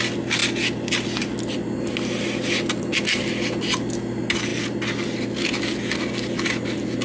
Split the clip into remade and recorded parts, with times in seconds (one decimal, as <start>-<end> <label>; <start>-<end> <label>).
0.0-7.0 recorded

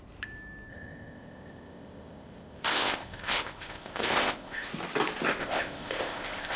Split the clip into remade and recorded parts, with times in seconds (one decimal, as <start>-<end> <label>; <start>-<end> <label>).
0.0-0.7 recorded; 0.7-4.7 remade; 4.7-5.4 recorded; 5.4-6.6 remade

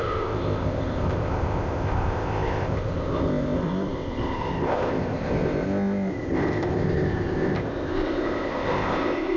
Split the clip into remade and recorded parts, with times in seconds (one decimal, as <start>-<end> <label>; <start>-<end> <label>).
0.0-9.4 remade

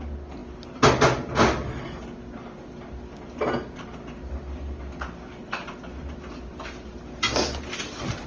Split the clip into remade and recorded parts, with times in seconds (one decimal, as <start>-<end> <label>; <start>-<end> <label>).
0.0-8.3 recorded

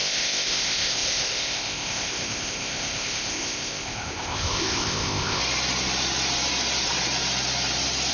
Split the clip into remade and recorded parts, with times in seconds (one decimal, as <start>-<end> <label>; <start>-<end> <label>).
0.0-5.4 remade; 5.4-8.1 recorded

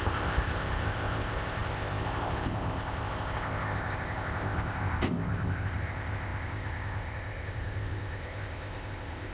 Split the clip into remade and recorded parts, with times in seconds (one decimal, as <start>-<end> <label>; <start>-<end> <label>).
0.0-9.3 remade

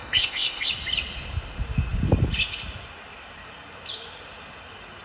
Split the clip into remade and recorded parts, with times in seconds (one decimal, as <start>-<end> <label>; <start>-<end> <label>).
0.0-0.7 remade; 0.7-5.0 recorded